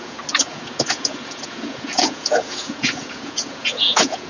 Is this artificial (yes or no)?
yes